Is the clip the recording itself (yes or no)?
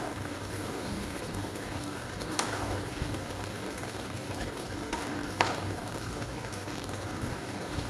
no